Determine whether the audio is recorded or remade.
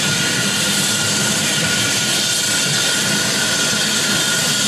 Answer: recorded